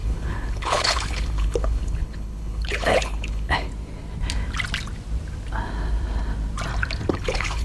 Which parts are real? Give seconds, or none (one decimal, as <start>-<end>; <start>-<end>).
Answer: 3.7-7.1